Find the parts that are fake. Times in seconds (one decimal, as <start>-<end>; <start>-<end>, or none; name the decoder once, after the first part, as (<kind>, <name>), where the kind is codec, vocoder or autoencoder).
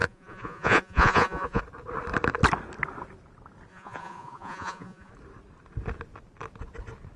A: 0.0-1.6 (vocoder, Vocos); 3.7-5.1